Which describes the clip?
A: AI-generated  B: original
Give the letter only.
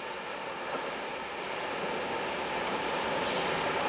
B